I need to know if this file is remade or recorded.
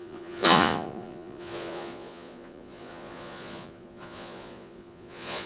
remade